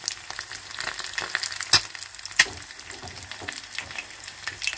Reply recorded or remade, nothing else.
recorded